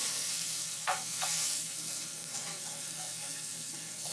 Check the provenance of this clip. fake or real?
fake